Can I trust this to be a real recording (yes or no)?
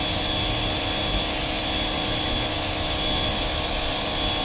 yes